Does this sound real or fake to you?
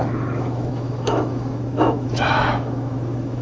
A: fake